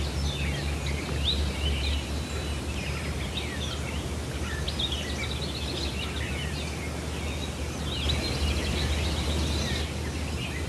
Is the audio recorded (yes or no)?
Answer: yes